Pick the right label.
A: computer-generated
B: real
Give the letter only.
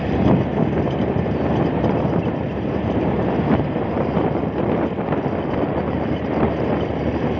B